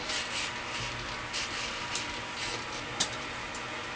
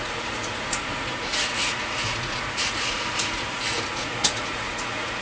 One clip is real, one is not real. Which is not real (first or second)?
second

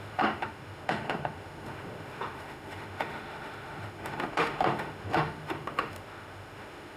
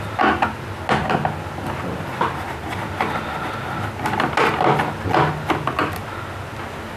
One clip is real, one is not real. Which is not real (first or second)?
first